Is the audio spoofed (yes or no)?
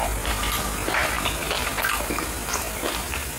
no